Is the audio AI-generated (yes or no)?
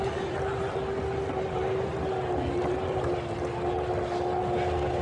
no